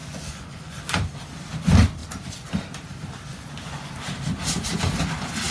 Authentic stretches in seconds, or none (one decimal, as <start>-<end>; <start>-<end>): 0.8-3.3; 3.9-5.5